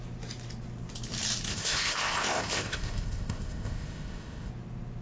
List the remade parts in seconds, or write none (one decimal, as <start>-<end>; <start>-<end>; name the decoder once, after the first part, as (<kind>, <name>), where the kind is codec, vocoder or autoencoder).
1.5-4.5 (codec, ZipCodec)